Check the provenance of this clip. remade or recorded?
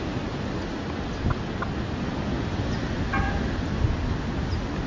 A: recorded